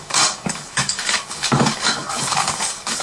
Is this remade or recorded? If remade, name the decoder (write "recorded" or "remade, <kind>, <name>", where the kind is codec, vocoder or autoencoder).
remade, codec, DAC